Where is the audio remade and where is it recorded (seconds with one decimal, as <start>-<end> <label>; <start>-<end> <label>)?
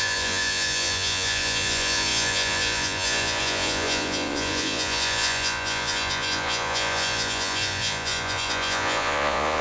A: 0.0-9.6 remade